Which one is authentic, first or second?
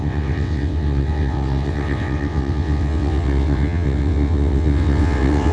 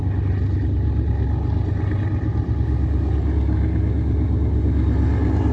second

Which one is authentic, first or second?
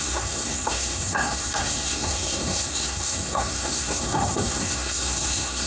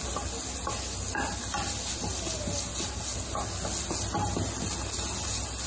second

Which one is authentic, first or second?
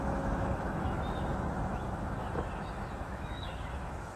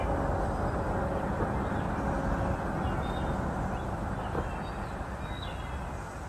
second